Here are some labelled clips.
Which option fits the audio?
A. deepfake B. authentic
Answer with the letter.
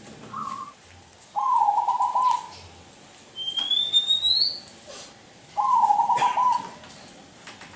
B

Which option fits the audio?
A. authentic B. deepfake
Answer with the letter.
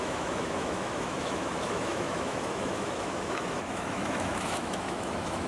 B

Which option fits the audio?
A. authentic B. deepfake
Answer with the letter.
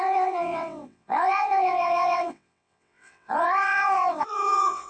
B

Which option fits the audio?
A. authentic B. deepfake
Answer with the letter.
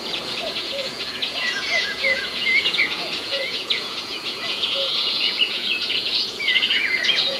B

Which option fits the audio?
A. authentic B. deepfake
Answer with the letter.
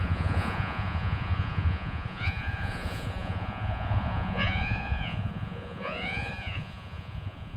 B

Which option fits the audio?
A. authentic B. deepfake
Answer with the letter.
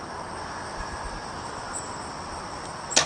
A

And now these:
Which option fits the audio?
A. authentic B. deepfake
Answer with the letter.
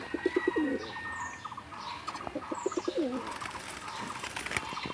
A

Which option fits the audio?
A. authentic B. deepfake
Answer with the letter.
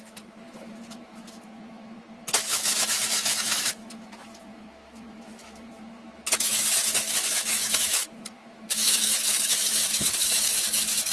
B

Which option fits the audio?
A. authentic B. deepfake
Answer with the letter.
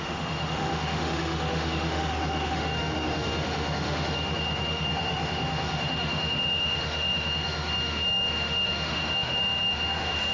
B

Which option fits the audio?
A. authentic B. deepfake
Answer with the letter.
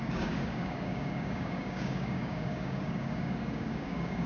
B